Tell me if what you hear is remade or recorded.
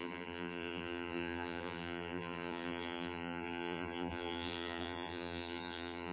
remade